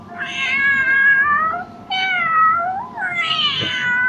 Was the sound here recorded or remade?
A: remade